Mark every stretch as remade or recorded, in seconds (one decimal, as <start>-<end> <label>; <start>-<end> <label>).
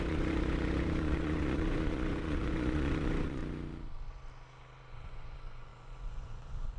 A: 0.0-3.4 remade; 3.4-4.9 recorded; 4.9-6.8 remade